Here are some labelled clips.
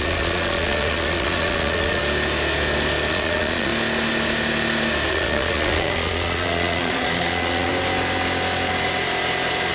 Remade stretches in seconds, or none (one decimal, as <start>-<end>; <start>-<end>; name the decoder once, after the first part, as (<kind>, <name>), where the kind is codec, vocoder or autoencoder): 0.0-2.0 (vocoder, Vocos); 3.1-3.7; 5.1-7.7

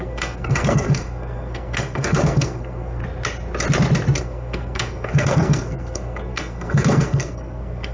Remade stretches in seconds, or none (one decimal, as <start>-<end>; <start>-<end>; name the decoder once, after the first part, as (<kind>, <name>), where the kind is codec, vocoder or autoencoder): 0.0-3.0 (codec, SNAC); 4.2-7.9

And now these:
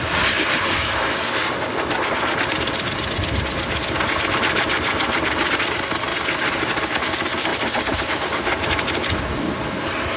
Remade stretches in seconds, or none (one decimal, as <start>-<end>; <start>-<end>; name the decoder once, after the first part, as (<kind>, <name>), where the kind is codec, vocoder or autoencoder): 0.0-4.0 (vocoder, BigVGAN v2); 7.5-9.2

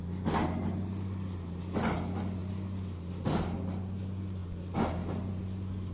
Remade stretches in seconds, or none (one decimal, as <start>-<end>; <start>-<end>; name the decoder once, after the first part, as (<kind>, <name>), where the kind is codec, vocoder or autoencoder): none

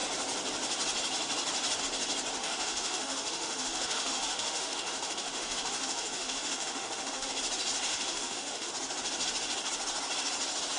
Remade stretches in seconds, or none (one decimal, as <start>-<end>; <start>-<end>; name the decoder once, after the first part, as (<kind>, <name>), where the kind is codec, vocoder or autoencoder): 2.4-7.3 (autoencoder, DAC-VAE); 7.9-8.7

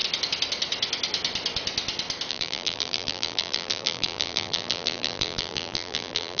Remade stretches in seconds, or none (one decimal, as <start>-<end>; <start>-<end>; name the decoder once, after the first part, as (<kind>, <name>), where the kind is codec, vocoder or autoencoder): 2.3-6.4 (vocoder, BigVGAN v2)